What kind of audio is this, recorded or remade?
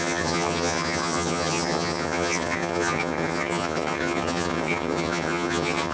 remade